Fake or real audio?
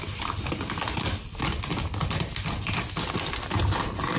real